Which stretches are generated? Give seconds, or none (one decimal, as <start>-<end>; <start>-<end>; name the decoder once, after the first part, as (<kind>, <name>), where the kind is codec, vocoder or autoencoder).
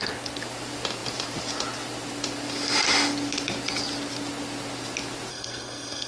5.3-6.1 (codec, SNAC)